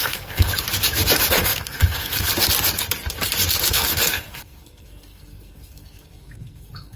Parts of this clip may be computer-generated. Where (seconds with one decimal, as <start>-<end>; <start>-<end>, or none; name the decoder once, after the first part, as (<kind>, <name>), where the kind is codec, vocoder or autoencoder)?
0.0-0.5 (codec, SNAC); 1.3-2.3; 3.7-7.0